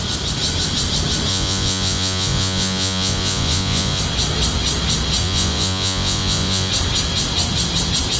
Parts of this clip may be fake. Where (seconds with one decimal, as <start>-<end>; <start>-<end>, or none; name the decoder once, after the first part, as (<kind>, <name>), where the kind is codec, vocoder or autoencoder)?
1.3-4.0 (vocoder, Vocos); 5.2-6.7